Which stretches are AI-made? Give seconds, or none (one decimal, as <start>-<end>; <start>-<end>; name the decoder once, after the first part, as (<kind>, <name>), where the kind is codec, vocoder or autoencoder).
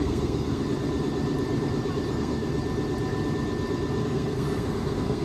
0.0-0.6 (codec, SNAC); 2.1-2.5; 4.0-5.2